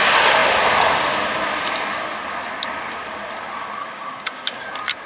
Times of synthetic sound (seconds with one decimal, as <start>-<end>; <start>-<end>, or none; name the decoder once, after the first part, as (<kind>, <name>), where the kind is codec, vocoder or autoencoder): 3.8-4.6 (codec, DAC)